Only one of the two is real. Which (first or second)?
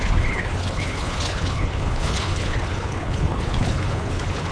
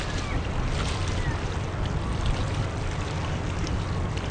second